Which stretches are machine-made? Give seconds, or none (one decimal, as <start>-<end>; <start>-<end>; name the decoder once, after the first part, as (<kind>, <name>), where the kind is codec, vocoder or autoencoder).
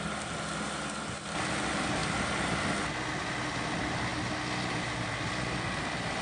none